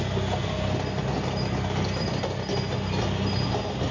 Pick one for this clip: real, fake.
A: real